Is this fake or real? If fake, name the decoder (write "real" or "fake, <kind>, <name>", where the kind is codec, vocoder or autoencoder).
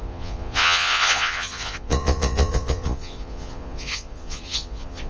fake, vocoder, Vocos